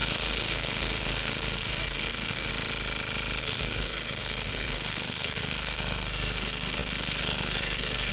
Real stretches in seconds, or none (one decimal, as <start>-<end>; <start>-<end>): 2.5-3.4